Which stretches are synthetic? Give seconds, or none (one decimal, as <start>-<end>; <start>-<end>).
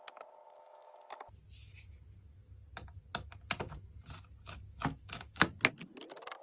0.4-1.0; 4.9-5.4